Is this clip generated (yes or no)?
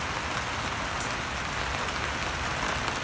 no